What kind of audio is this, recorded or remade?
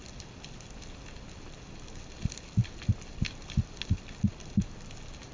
recorded